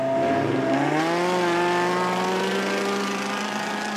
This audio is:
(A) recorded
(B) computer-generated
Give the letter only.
A